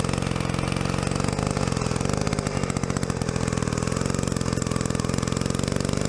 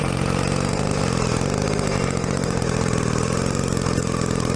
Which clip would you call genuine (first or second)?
first